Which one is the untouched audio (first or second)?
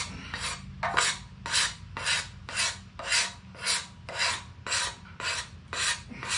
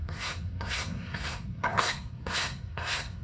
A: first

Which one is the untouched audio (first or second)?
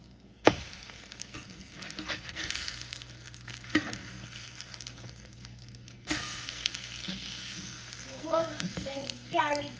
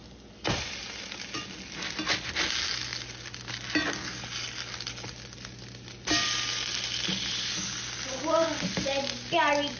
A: second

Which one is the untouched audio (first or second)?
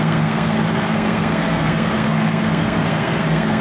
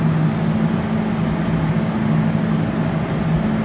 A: second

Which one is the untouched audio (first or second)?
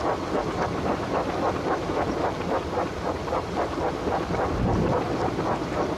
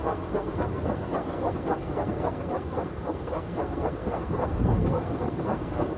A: first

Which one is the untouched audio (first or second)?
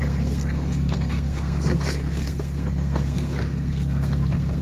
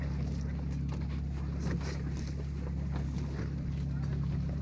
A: second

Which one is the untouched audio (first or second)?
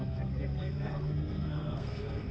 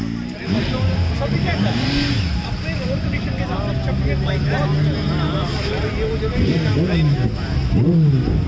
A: second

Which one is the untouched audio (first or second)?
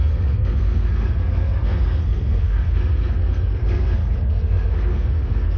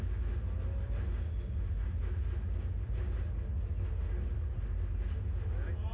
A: second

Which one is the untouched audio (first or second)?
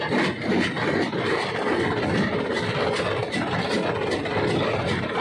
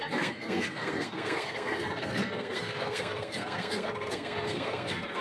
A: first